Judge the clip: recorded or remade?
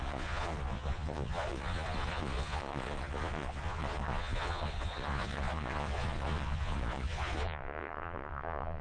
remade